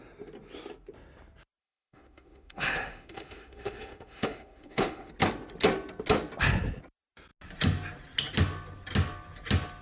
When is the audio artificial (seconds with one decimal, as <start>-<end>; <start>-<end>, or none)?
1.6-5.1

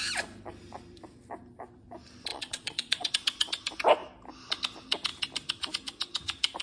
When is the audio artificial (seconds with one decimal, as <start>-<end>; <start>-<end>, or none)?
2.3-3.1

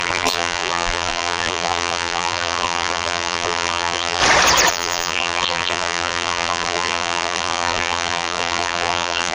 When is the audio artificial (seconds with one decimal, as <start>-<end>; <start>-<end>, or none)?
0.0-4.2; 4.7-9.3

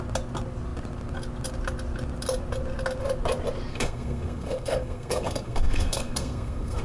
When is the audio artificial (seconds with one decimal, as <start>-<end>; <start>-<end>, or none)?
3.7-6.8